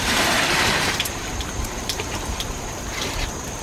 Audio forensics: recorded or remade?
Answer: remade